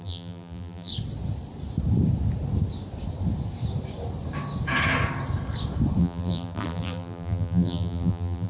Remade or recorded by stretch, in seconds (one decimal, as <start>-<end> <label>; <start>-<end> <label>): 0.0-0.9 remade; 0.9-6.0 recorded; 6.0-8.5 remade

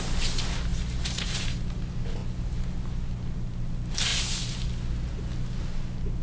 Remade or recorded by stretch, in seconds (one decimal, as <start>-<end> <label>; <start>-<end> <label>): 0.0-6.2 recorded